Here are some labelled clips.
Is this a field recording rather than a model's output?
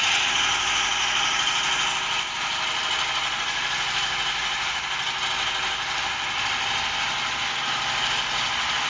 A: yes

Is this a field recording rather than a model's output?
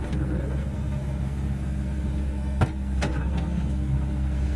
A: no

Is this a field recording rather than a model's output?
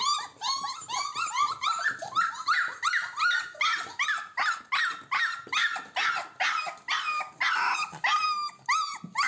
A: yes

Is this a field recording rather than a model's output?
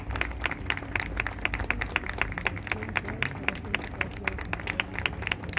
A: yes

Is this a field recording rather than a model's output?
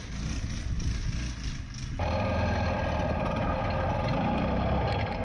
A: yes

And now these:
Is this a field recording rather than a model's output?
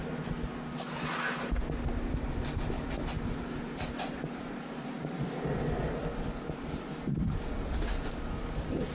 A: yes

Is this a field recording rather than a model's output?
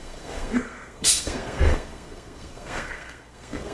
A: no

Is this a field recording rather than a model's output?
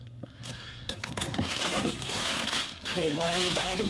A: no